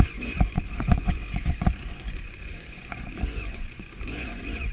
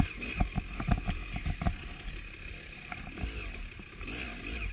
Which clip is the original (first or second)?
second